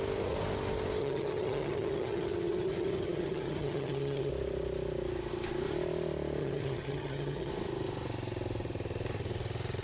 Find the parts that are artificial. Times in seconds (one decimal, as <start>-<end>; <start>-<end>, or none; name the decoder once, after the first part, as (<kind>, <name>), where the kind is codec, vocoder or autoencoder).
1.0-4.3 (vocoder, HiFi-GAN); 6.4-7.5